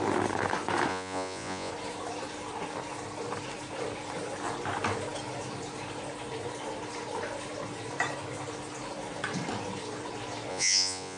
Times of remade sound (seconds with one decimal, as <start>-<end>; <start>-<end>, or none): 0.9-1.7; 10.5-11.2